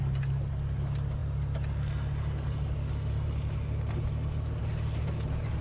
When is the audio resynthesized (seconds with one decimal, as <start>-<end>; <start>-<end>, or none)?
none